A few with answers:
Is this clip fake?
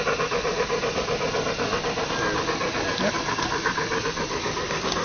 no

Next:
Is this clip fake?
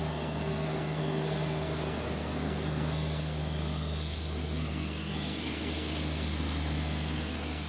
yes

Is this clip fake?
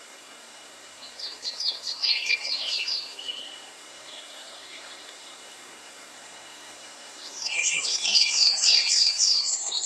yes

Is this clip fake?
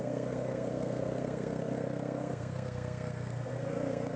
yes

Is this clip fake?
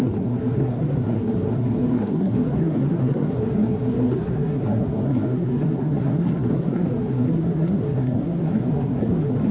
yes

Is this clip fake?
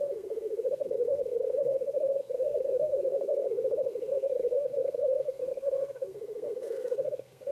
yes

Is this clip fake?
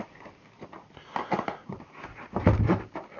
no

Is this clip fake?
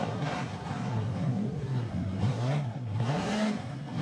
yes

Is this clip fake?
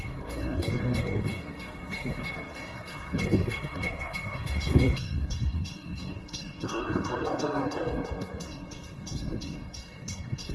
yes